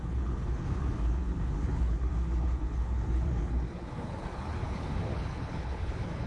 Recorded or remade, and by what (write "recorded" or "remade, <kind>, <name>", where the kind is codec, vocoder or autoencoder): remade, codec, HILCodec